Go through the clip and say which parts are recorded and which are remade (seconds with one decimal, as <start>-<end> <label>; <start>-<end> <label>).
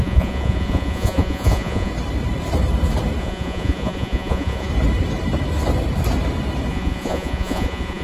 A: 0.0-1.9 remade; 1.9-3.2 recorded; 3.2-4.7 remade; 4.7-6.7 recorded; 6.7-8.0 remade